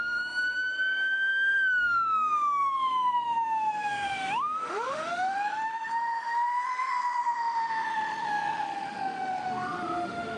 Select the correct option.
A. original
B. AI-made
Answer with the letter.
B